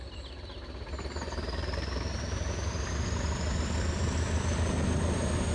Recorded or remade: recorded